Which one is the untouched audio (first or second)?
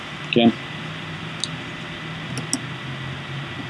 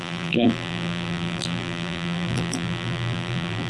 first